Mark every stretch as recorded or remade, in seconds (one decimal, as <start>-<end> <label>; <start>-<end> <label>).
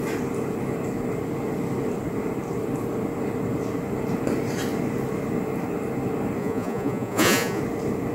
0.0-6.4 recorded; 6.4-7.6 remade; 7.6-8.1 recorded